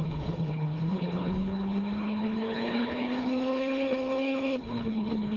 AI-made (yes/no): yes